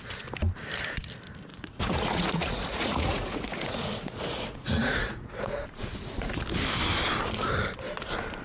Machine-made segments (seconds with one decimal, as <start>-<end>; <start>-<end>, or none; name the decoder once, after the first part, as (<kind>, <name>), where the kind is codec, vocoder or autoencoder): 1.5-6.4 (vocoder, Vocos)